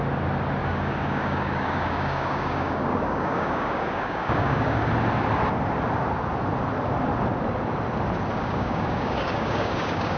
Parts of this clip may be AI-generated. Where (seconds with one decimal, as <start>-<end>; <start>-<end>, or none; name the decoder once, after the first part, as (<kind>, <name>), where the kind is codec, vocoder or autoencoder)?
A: 0.6-4.9 (codec, DAC); 8.4-10.2